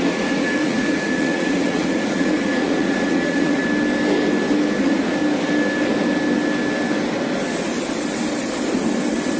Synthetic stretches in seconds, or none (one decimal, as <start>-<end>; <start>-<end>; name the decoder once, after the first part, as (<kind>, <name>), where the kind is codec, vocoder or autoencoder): 0.0-3.6 (vocoder, Vocos); 4.8-5.2